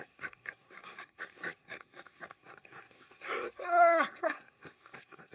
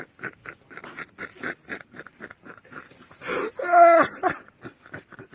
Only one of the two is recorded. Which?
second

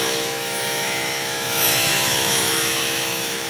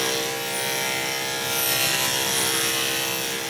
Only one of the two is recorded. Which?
second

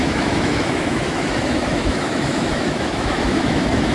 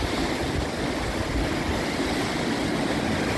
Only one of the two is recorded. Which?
second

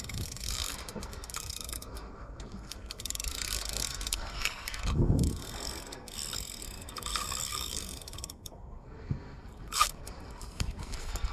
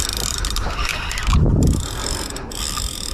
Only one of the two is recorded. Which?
second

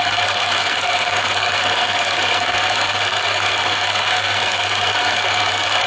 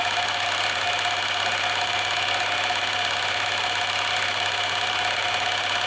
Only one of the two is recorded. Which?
second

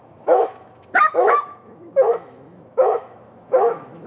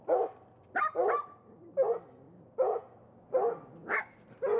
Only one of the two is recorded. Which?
second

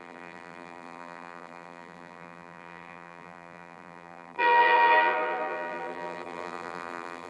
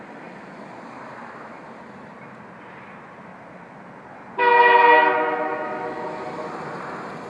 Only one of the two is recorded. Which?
second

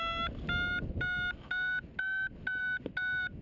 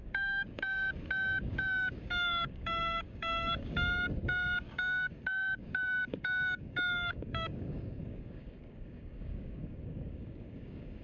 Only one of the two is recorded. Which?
first